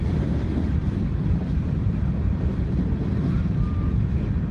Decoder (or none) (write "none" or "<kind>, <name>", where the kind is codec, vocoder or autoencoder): vocoder, BigVGAN v2